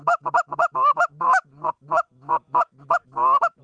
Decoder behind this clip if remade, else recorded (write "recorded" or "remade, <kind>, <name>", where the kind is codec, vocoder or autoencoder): remade, autoencoder, DAC-VAE